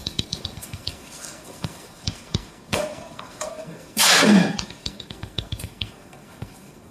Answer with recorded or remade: remade